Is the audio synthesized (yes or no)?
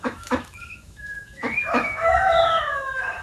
yes